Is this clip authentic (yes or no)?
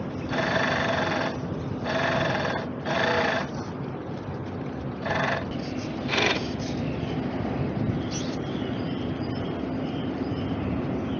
yes